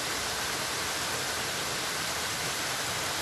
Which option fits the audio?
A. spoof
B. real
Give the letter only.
B